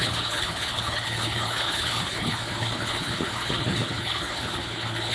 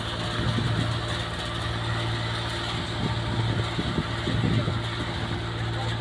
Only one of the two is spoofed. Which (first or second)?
first